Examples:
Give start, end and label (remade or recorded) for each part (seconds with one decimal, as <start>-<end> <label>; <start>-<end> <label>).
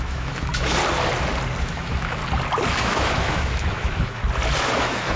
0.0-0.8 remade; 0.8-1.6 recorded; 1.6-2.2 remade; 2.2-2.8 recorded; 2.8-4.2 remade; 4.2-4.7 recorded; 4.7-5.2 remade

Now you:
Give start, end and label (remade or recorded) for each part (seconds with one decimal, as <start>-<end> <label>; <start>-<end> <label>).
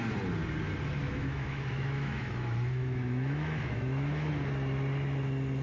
0.0-1.0 recorded; 1.0-4.3 remade; 4.3-5.6 recorded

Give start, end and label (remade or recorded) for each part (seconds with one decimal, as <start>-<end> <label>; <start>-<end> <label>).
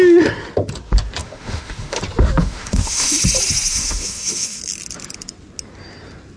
0.0-1.2 recorded; 1.2-2.0 remade; 2.0-2.4 recorded; 2.4-3.2 remade; 3.2-3.7 recorded; 3.7-4.6 remade; 4.6-6.4 recorded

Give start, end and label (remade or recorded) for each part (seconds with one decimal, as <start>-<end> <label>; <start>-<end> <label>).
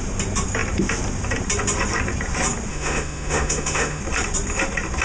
0.0-2.7 recorded; 2.7-4.0 remade; 4.0-5.0 recorded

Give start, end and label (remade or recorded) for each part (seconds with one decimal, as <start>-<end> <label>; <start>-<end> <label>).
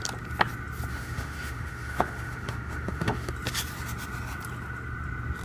0.0-0.9 recorded; 0.9-3.3 remade; 3.3-5.4 recorded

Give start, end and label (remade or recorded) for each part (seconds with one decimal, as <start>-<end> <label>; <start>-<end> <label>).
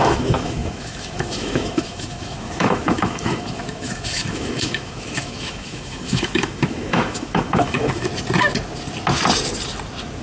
0.0-8.1 remade; 8.1-10.2 recorded